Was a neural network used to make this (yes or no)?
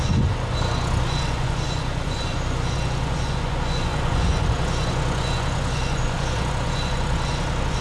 yes